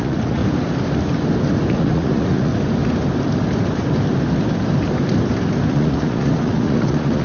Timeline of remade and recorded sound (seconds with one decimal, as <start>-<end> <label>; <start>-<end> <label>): 0.0-0.4 remade; 0.4-1.7 recorded; 1.7-2.5 remade; 2.5-5.7 recorded; 5.7-7.2 remade